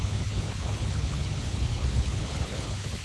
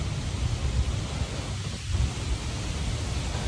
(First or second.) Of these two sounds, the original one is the second